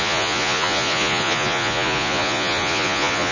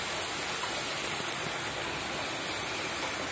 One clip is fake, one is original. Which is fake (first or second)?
first